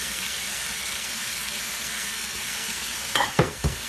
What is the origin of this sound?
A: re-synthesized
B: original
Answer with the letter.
A